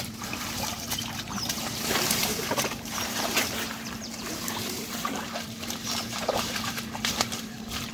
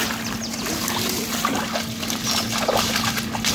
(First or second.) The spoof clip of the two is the first